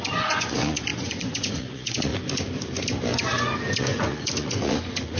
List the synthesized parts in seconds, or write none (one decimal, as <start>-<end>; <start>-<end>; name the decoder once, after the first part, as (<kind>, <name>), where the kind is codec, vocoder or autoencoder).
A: 0.0-2.1 (vocoder, Vocos); 3.8-5.2